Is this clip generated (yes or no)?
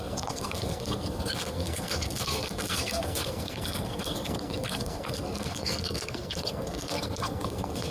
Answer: yes